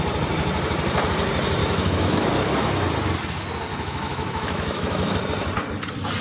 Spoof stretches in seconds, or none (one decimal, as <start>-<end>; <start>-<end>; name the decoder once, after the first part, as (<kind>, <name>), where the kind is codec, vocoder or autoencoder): 1.6-2.3 (autoencoder, DAC-VAE); 3.7-5.2